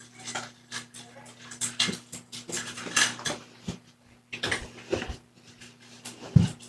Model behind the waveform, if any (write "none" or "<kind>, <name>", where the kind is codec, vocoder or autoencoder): vocoder, BigVGAN v2